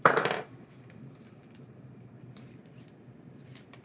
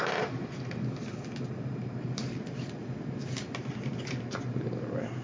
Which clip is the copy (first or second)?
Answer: first